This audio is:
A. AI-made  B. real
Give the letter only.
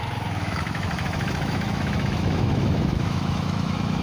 A